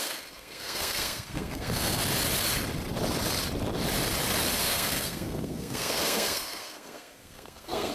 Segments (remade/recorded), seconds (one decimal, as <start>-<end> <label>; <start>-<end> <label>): 0.0-2.0 remade; 2.0-4.6 recorded; 4.6-7.9 remade